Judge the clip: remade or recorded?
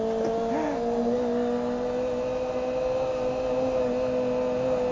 recorded